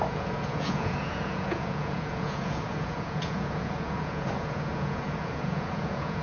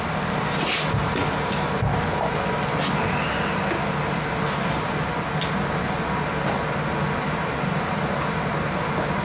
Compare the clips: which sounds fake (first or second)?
first